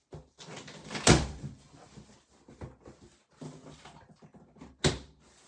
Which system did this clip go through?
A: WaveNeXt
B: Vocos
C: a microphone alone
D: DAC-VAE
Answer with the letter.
C